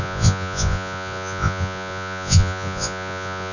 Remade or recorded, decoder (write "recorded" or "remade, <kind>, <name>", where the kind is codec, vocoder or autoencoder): remade, vocoder, Vocos